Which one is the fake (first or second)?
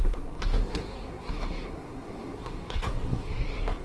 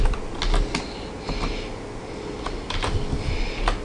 first